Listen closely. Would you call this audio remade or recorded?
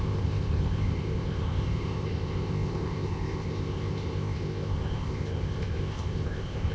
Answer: remade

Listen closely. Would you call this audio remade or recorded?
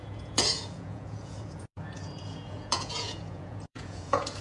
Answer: remade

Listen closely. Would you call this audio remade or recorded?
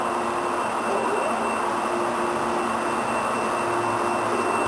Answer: recorded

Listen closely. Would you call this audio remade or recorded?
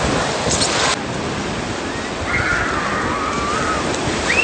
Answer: recorded